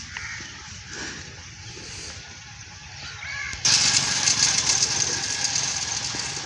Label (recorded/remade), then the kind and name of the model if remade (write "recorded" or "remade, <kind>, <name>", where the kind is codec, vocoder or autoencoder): recorded